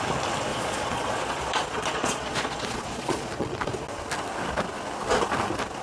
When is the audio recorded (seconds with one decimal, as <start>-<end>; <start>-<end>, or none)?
0.0-0.5; 3.7-5.8